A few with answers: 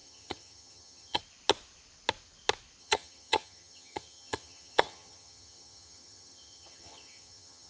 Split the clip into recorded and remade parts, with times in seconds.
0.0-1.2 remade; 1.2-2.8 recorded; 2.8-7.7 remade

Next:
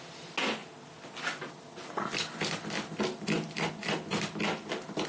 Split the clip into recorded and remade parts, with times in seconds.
0.0-5.1 recorded